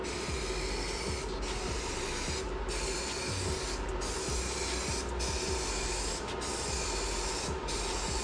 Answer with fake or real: real